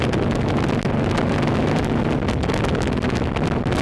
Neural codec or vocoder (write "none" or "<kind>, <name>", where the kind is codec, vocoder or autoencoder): none